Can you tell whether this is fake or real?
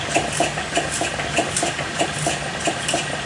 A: real